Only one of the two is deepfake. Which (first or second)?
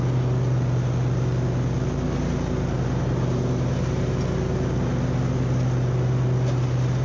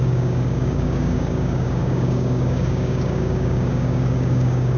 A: second